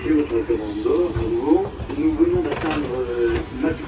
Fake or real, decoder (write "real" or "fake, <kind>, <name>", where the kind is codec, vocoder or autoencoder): real